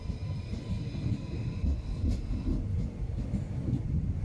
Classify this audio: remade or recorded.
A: recorded